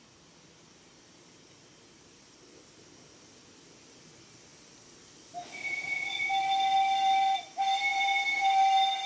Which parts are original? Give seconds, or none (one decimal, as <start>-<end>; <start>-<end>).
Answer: 0.0-9.1